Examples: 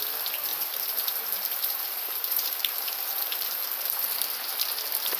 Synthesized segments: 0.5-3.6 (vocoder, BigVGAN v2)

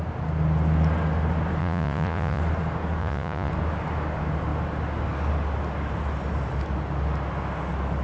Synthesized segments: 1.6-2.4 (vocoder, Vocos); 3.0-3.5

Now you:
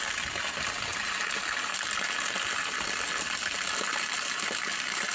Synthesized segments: none

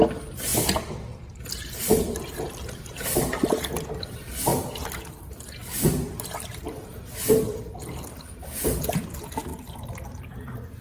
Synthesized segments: 4.5-5.5 (vocoder, BigVGAN v2); 9.5-10.2

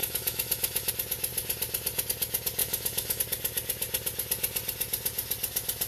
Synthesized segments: 0.0-0.9 (autoencoder, DAC-VAE); 2.6-3.2

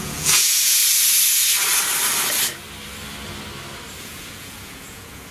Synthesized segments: 0.0-0.8 (vocoder, Vocos); 4.0-5.3

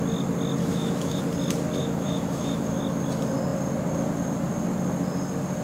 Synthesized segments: 0.6-1.2 (autoencoder, DAC-VAE); 1.8-2.8

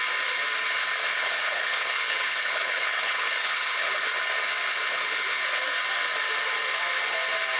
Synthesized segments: 1.2-4.2 (codec, HILCodec); 4.7-5.4